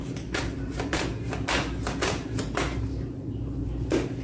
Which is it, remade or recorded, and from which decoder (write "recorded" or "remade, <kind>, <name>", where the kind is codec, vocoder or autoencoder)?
remade, vocoder, BigVGAN v2